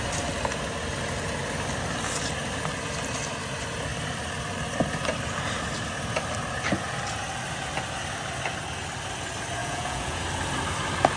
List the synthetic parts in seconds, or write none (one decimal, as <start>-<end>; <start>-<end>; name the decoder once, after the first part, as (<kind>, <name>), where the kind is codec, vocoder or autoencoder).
9.6-10.2 (vocoder, Vocos)